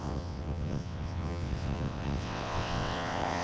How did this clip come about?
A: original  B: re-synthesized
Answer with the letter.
B